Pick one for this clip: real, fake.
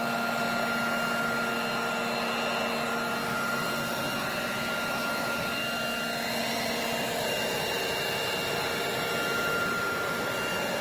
real